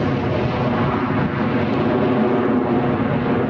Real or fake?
real